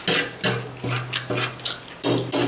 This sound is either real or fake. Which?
real